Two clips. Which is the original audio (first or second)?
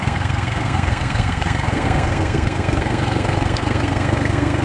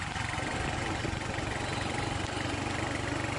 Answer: second